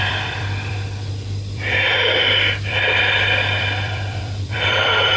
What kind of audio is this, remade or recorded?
remade